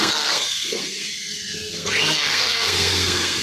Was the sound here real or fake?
fake